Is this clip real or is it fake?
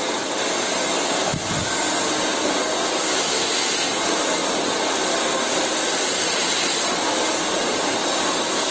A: real